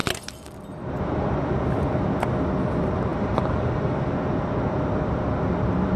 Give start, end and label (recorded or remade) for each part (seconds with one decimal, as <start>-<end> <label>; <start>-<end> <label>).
0.0-3.1 recorded; 3.1-4.1 remade; 4.1-6.0 recorded